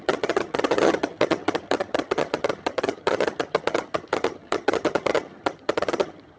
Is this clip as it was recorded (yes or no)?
no